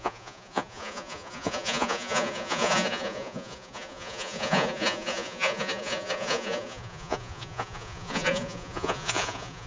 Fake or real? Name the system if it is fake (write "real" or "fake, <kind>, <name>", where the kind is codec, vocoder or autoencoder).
fake, vocoder, Vocos